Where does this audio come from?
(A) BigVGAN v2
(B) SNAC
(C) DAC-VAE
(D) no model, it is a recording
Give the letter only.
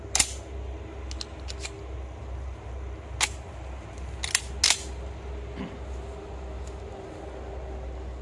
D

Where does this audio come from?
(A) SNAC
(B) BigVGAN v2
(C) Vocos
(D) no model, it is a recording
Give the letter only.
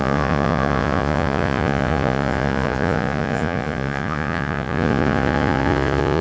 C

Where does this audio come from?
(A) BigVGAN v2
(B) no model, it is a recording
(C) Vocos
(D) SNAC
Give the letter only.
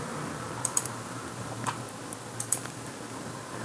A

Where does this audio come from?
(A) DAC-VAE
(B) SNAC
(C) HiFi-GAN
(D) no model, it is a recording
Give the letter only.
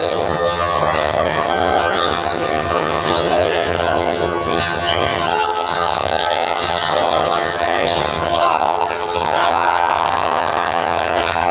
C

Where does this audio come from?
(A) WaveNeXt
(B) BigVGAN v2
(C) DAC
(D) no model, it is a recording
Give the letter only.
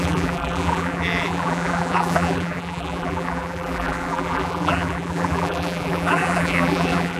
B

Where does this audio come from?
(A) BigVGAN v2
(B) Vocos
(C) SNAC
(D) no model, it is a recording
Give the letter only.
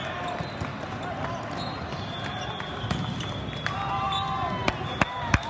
D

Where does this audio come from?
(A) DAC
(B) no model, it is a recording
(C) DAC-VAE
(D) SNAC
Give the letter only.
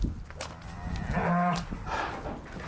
B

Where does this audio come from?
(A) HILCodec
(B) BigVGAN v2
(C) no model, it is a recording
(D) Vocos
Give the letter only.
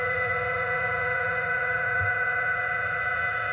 D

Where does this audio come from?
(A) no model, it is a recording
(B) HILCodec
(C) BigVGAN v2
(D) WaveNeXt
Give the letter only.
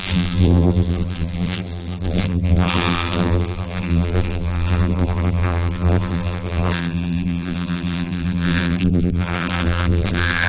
C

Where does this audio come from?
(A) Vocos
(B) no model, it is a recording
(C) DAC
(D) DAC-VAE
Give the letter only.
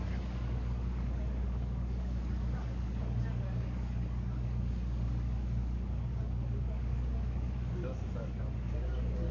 C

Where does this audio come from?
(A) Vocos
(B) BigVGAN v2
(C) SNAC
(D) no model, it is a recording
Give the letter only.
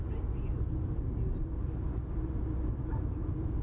D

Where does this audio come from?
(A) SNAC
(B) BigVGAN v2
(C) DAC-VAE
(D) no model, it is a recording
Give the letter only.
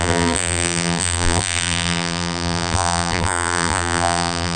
B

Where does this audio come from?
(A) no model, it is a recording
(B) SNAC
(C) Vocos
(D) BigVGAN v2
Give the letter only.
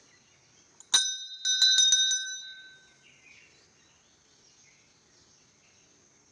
A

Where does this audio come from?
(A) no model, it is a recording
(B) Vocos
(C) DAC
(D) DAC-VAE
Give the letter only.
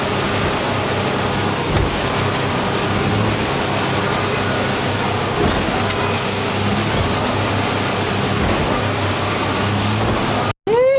A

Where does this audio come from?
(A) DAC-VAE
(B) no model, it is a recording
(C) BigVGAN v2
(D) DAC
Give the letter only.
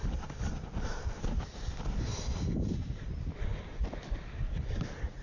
B